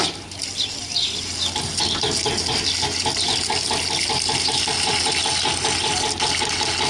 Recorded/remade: recorded